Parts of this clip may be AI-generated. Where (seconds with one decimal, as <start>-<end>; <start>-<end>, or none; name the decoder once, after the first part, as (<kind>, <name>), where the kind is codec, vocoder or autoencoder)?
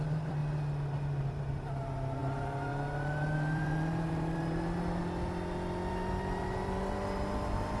0.0-0.4 (vocoder, BigVGAN v2); 1.3-5.0; 5.9-7.8